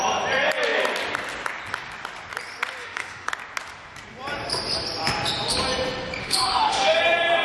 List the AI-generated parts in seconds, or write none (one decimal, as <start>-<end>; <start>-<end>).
2.8-3.3; 6.2-7.0